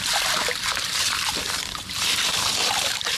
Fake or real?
fake